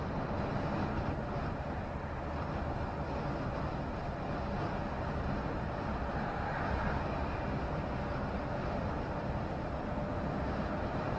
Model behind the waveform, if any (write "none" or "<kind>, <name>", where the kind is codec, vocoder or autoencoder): none